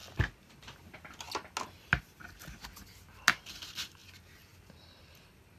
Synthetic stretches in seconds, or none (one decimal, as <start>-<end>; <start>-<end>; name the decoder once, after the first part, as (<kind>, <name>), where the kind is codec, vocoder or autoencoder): none